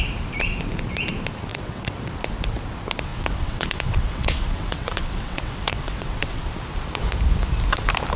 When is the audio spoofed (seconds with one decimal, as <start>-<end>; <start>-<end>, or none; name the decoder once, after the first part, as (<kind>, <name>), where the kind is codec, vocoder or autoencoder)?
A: 1.5-2.1 (vocoder, WaveNeXt); 3.1-6.4